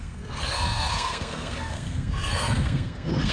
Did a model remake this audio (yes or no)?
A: yes